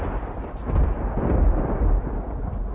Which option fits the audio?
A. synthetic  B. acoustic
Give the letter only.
B